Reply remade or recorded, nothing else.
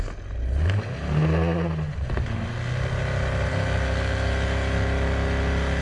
recorded